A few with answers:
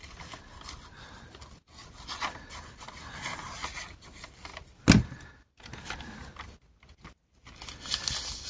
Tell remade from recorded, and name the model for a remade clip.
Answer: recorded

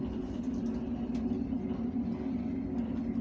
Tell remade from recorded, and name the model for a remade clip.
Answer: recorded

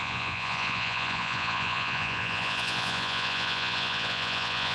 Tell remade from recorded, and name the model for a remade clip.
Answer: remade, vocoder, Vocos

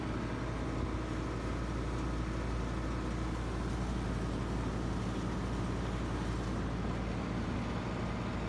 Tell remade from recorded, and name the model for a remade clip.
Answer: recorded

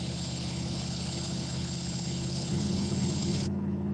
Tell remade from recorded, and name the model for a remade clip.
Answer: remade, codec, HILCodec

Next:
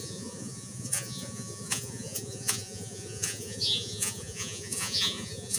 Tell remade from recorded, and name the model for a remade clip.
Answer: remade, vocoder, Vocos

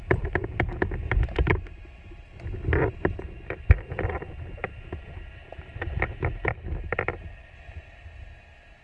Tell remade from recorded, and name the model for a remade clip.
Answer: recorded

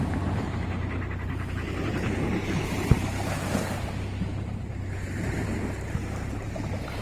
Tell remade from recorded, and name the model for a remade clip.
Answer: remade, vocoder, BigVGAN v2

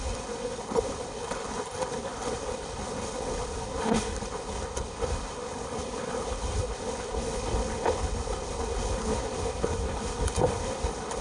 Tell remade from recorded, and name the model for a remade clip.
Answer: remade, codec, HILCodec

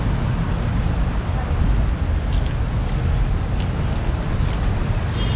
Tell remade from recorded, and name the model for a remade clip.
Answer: recorded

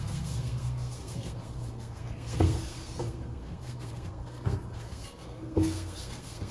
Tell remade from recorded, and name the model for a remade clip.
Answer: remade, codec, SNAC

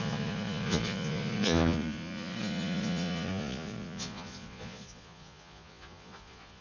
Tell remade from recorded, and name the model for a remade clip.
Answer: remade, vocoder, Vocos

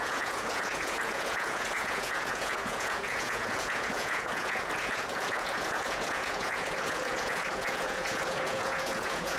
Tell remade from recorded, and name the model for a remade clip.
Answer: remade, vocoder, Vocos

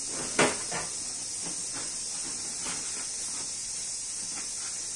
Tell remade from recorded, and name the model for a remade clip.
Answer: recorded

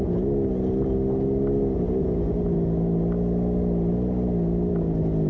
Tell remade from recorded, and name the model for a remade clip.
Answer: recorded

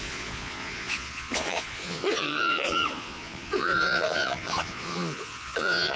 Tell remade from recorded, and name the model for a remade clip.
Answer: remade, vocoder, Vocos